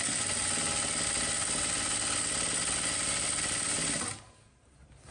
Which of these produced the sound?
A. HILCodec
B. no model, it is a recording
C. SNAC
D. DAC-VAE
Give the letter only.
B